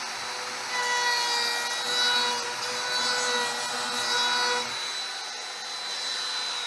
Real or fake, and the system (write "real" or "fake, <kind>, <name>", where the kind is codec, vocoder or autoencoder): real